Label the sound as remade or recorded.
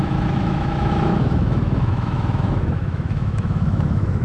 remade